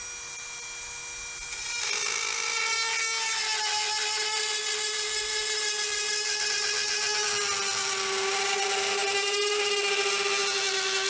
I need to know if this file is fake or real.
real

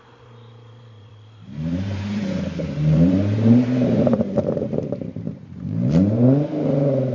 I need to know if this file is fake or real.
fake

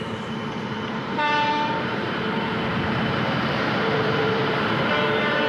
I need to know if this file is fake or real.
fake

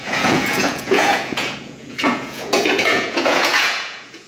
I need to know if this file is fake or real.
fake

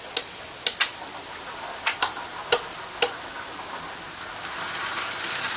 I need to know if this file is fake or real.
real